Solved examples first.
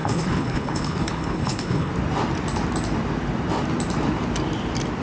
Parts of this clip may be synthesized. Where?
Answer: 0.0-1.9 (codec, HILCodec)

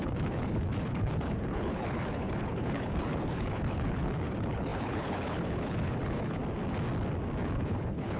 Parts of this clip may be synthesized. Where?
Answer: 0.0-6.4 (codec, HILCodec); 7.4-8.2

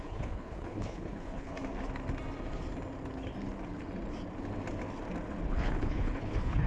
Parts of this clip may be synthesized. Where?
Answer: 0.0-1.5 (codec, HILCodec); 5.5-6.7

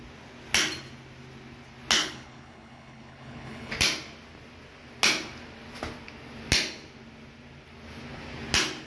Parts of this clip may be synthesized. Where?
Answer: 2.0-3.7 (codec, HILCodec)

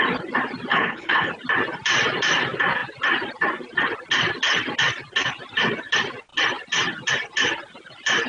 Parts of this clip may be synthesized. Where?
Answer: 0.7-1.3 (codec, HILCodec)